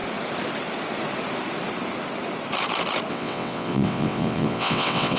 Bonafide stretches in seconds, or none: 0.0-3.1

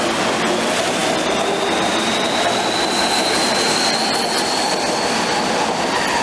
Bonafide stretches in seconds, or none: 0.0-6.2

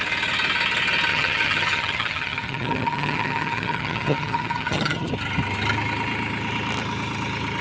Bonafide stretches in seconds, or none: 0.0-1.1; 5.1-7.6

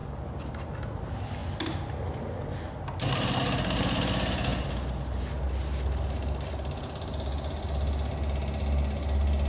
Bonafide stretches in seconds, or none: 0.0-9.5

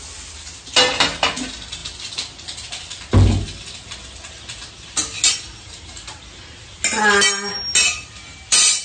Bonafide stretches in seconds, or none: 0.0-8.8

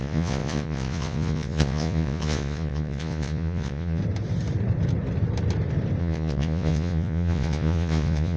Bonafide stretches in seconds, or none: 4.0-6.0

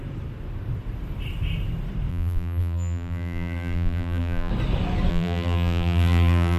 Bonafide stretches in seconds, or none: 0.0-2.1; 4.5-5.1

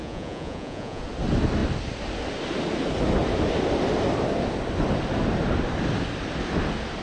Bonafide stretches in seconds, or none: 1.0-7.0